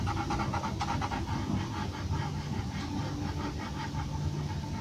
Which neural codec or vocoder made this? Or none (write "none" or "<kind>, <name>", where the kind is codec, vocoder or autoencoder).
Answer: none